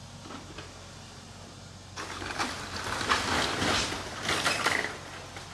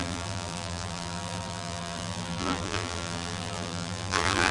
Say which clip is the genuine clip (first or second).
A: first